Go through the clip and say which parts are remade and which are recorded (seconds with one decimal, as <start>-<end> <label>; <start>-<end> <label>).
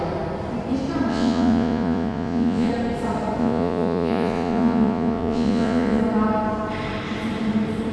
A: 0.0-1.1 recorded; 1.1-2.7 remade; 2.7-3.4 recorded; 3.4-6.0 remade; 6.0-7.9 recorded